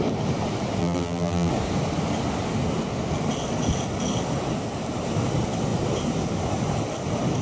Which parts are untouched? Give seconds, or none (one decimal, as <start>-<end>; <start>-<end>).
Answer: 0.0-0.8; 1.5-7.4